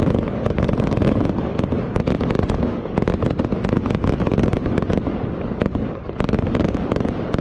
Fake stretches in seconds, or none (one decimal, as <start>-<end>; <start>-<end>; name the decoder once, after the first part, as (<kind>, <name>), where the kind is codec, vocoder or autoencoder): 0.0-3.1 (codec, DAC); 3.7-7.4